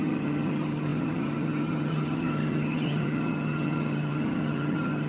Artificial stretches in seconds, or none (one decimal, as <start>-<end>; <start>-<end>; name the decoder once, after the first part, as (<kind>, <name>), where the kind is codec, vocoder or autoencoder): 0.0-5.1 (vocoder, HiFi-GAN)